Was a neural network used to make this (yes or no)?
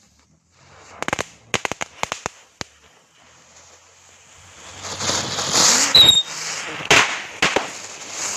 no